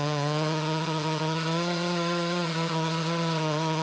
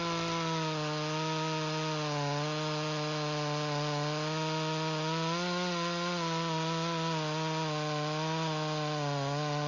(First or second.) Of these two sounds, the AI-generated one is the first